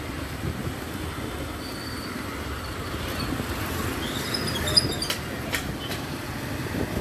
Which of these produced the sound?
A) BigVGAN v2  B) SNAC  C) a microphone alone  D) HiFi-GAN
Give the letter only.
C